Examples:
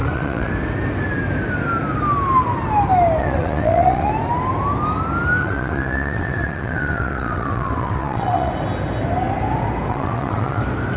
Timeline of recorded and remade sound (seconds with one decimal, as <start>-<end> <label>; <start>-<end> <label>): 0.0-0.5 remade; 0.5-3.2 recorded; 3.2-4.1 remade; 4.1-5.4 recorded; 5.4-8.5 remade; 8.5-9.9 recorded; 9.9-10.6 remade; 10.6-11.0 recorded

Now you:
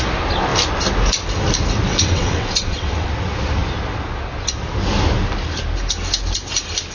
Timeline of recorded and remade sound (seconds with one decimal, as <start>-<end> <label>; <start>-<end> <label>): 0.0-1.9 recorded; 1.9-3.1 remade; 3.1-6.9 recorded

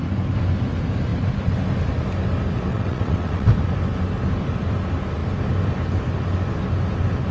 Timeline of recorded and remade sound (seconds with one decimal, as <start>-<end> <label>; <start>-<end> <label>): 0.0-2.7 recorded; 2.7-3.5 remade; 3.5-7.3 recorded

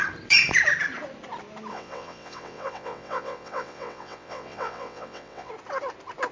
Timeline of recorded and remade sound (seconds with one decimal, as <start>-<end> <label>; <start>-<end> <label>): 0.0-1.7 recorded; 1.7-5.5 remade; 5.5-6.3 recorded

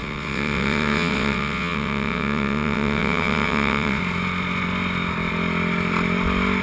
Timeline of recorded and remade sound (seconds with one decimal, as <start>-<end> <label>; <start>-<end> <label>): 0.0-4.0 remade; 4.0-6.6 recorded

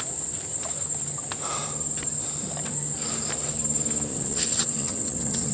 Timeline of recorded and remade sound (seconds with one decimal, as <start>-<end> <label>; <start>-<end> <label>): 0.0-4.1 recorded; 4.1-5.5 remade